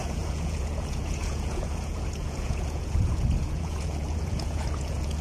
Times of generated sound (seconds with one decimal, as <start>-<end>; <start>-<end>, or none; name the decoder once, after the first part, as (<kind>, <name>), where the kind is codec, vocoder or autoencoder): 0.0-5.2 (vocoder, Vocos)